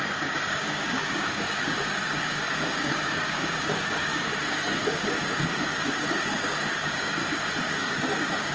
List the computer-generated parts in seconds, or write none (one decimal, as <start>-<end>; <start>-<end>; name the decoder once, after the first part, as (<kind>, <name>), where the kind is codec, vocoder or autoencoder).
0.0-7.2 (codec, DAC); 7.7-8.5